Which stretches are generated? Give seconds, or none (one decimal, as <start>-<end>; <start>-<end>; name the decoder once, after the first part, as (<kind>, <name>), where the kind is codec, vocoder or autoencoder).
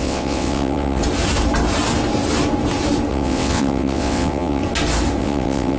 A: 0.0-1.0 (vocoder, WaveNeXt); 3.1-4.6; 5.2-5.8